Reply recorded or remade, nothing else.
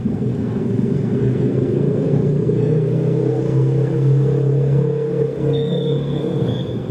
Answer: remade